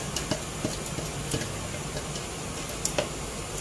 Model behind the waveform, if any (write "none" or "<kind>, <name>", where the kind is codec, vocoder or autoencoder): none